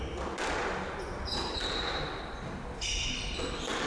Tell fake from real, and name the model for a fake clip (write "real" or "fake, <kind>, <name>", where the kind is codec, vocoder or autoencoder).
real